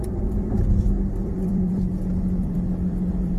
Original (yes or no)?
no